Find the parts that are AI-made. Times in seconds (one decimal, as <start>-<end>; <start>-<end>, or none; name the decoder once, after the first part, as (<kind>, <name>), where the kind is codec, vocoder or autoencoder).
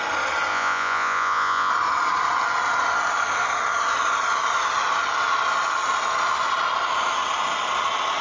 0.5-1.7 (vocoder, Vocos)